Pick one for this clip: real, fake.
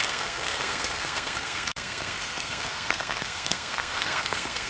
fake